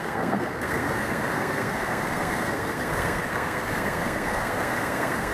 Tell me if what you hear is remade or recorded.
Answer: remade